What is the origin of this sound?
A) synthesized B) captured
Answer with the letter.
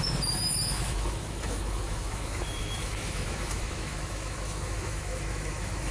A